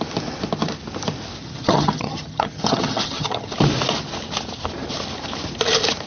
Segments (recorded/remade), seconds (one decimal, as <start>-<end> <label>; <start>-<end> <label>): 0.0-1.4 recorded; 1.4-3.5 remade; 3.5-6.1 recorded